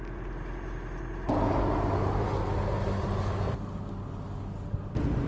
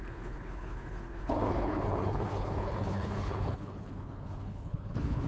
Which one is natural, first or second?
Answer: first